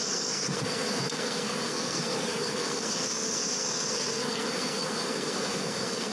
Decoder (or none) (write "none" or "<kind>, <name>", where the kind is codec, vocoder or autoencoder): codec, SNAC